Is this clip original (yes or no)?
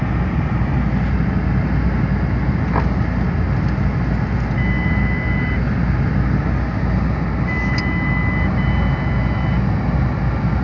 yes